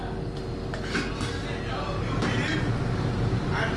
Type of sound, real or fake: real